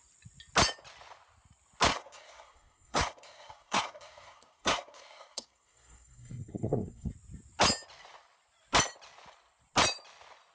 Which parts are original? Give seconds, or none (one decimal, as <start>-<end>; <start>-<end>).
0.0-1.9; 7.1-10.5